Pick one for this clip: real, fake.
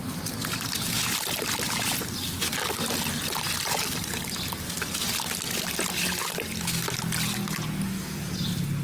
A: real